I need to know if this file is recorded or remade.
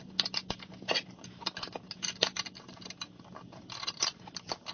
recorded